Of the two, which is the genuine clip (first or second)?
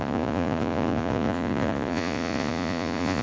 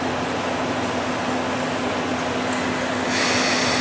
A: second